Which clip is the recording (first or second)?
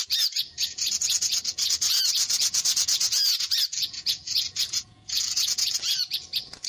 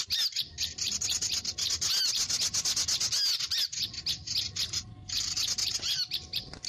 second